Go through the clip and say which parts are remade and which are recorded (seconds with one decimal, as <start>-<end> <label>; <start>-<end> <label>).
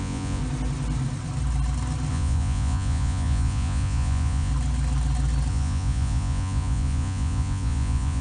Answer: 0.0-0.4 remade; 0.4-2.1 recorded; 2.1-4.5 remade; 4.5-5.5 recorded; 5.5-8.2 remade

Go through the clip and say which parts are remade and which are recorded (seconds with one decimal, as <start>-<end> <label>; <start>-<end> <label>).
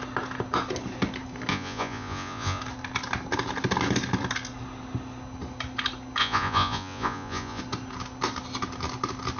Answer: 0.0-1.5 recorded; 1.5-2.6 remade; 2.6-6.2 recorded; 6.2-7.6 remade; 7.6-9.4 recorded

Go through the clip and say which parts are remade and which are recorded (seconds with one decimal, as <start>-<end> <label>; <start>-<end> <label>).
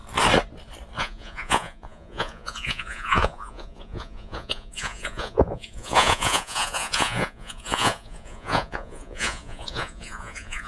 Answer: 0.0-1.0 recorded; 1.0-10.7 remade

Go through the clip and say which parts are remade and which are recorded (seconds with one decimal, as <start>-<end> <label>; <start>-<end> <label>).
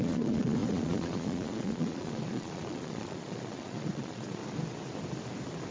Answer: 0.0-4.4 remade; 4.4-5.7 recorded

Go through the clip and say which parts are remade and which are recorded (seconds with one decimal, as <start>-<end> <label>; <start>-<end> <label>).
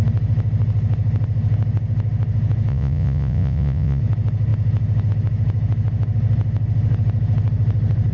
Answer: 0.0-2.7 recorded; 2.7-4.0 remade; 4.0-8.1 recorded